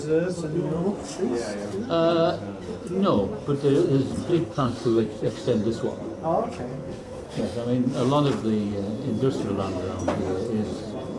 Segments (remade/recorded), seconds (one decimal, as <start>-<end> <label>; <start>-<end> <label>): 0.0-4.3 recorded; 4.3-5.3 remade; 5.3-6.7 recorded; 6.7-7.4 remade; 7.4-11.2 recorded